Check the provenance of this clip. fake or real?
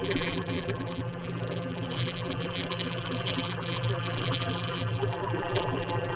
fake